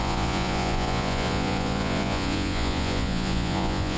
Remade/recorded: remade